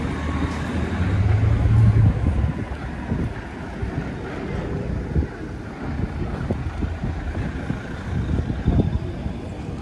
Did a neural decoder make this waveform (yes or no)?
no